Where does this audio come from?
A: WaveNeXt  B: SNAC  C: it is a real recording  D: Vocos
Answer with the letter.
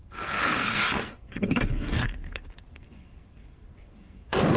B